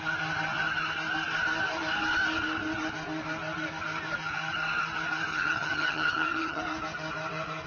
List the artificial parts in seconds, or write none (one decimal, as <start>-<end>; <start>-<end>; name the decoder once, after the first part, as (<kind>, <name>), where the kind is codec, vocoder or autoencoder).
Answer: 5.3-6.6 (vocoder, HiFi-GAN)